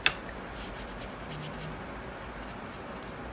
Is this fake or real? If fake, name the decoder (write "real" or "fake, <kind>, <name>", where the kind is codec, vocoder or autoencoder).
real